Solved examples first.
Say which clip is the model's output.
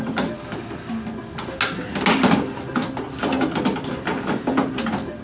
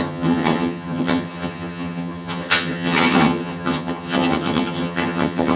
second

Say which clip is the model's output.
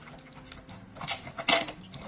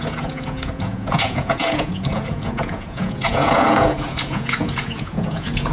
second